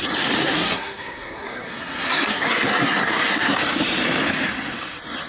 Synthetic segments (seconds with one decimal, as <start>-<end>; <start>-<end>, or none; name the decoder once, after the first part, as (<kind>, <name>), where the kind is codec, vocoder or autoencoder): 0.4-3.6 (codec, SNAC)